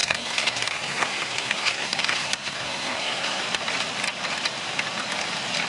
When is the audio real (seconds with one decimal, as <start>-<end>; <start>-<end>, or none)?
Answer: 3.4-5.7